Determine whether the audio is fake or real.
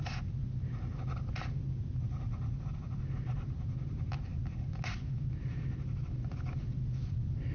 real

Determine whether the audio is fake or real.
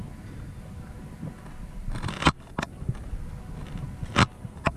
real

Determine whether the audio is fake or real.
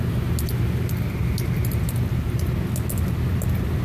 real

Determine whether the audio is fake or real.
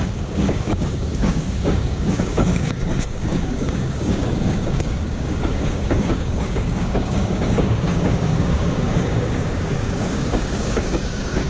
fake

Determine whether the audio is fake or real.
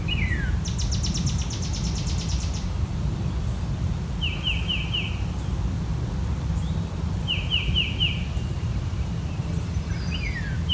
real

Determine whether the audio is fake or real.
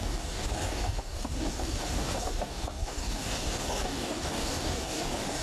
fake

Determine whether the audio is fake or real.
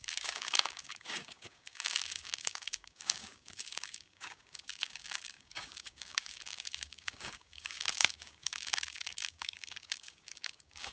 fake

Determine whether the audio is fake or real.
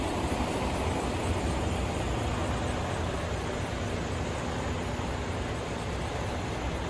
real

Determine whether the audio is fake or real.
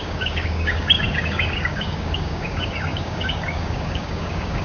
fake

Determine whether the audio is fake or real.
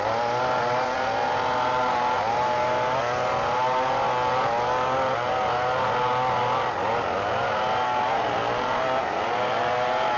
real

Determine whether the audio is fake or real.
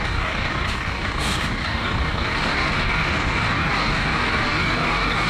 fake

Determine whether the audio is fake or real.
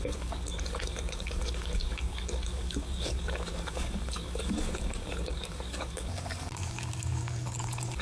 fake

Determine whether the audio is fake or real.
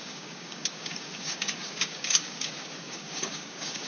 fake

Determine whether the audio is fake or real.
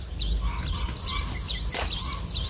real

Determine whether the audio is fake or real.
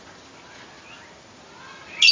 real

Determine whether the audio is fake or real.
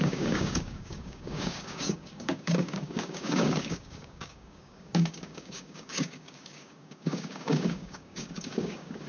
fake